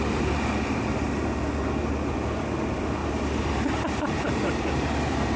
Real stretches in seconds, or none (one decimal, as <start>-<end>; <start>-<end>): 0.0-3.0